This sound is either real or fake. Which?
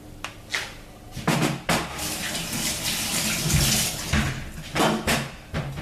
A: real